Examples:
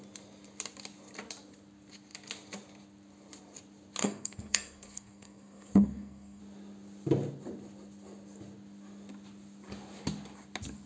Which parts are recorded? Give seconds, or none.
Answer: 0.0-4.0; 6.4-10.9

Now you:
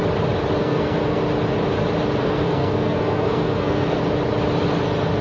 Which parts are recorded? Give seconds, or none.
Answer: 0.0-0.6; 1.2-2.2; 4.0-5.2

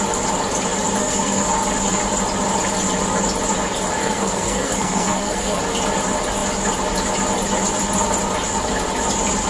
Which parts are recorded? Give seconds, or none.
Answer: 0.0-1.0; 1.5-4.0; 5.6-9.5

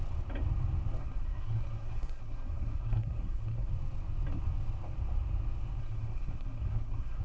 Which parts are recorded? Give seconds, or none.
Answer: 0.0-1.0; 3.7-5.8

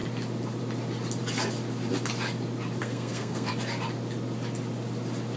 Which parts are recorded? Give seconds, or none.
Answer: 0.0-2.8; 3.5-5.4